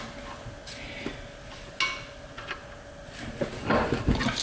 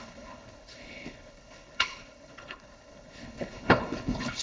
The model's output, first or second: second